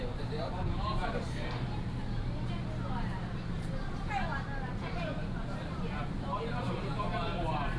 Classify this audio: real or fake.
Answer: fake